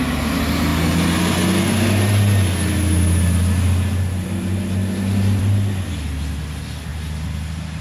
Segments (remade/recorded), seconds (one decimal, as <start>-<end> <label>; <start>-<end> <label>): 0.0-7.8 recorded

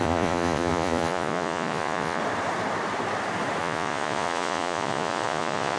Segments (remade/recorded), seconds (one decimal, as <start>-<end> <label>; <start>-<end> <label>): 0.0-2.2 remade; 2.2-3.6 recorded; 3.6-5.8 remade